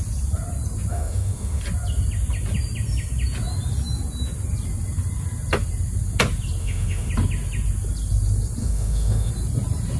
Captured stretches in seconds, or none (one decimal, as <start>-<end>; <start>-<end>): 0.0-0.9; 1.6-6.6; 7.1-8.6; 9.3-10.0